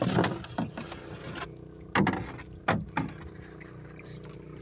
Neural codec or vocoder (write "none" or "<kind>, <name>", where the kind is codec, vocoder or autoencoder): none